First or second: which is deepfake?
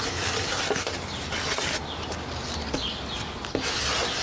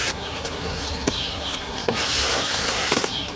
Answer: second